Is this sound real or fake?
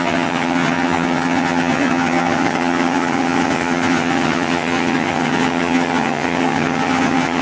fake